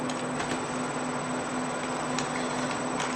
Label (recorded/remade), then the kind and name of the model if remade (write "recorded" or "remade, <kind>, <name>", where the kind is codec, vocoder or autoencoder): recorded